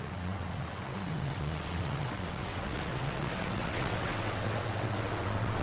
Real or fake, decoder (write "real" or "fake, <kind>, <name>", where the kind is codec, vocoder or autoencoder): fake, vocoder, WaveNeXt